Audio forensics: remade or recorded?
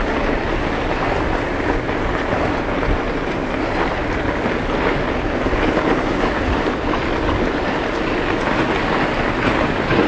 recorded